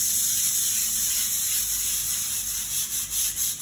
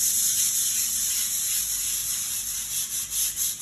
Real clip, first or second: second